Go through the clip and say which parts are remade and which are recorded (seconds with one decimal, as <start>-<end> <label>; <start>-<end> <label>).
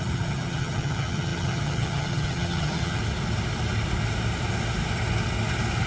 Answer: 0.0-3.0 remade; 3.0-5.9 recorded